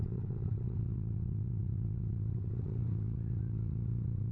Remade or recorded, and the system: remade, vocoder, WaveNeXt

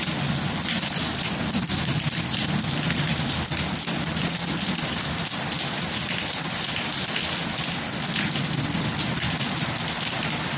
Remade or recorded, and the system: recorded